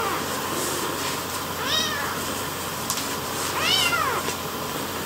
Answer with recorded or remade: recorded